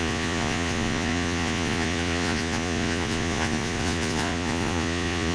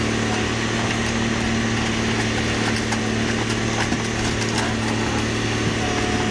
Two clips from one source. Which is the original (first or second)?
second